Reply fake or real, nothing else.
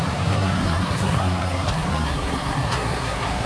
fake